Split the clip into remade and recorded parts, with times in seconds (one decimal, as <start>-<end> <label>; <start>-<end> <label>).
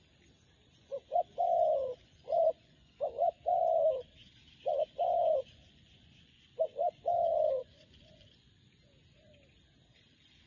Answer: 0.0-0.8 recorded; 0.8-3.6 remade; 3.6-5.2 recorded; 5.2-8.5 remade; 8.5-10.5 recorded